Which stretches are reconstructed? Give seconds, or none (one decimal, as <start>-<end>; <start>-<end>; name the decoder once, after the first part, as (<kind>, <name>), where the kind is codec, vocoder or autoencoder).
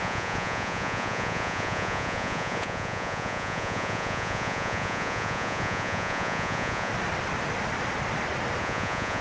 0.0-6.9 (vocoder, Vocos); 8.6-9.2